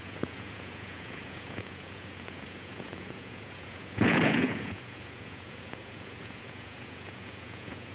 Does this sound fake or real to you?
fake